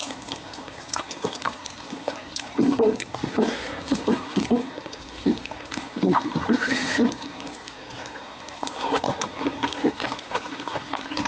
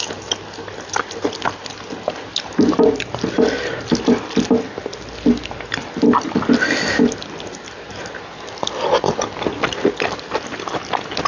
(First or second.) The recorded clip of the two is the second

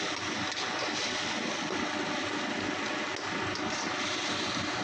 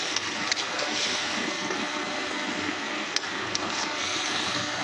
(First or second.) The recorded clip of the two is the first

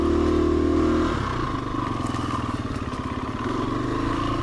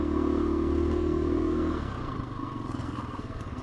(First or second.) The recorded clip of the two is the first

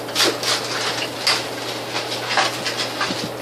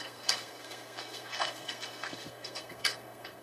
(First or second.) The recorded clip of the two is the first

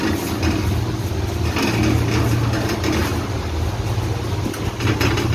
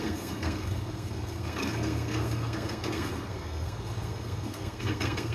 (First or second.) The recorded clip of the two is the first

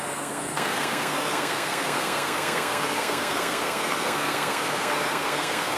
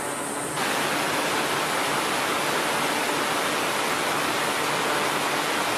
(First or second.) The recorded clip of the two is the second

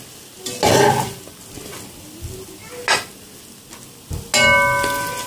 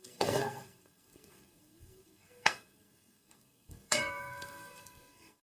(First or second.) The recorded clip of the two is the first